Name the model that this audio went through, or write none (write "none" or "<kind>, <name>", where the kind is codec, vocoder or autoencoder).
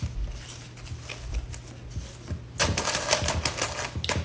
none